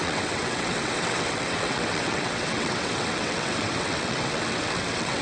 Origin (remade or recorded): remade